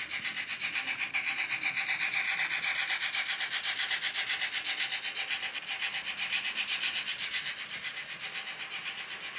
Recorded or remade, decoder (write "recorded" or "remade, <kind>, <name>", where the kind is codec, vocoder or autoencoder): recorded